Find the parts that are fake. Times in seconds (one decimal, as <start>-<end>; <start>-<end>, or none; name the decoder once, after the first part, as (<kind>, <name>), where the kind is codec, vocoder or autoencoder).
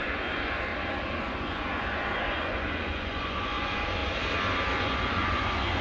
0.0-0.7 (vocoder, Vocos); 1.2-4.0; 4.8-5.8